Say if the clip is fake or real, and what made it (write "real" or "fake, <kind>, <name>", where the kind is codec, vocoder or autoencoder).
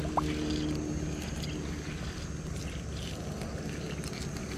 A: real